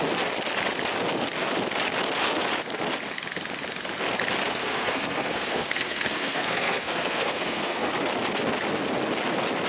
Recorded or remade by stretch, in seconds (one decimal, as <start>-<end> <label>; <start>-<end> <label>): 0.0-4.6 recorded; 4.6-7.9 remade; 7.9-9.7 recorded